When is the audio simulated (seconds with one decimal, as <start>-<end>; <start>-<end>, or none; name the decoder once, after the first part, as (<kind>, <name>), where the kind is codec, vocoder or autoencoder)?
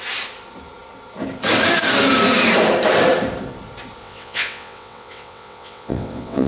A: 4.0-6.5 (vocoder, WaveNeXt)